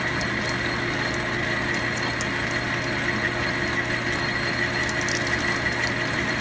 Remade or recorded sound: recorded